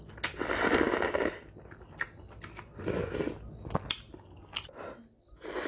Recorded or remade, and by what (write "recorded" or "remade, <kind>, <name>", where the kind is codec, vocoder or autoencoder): recorded